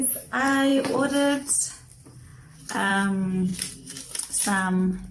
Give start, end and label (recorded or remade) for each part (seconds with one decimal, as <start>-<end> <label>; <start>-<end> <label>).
0.0-5.1 recorded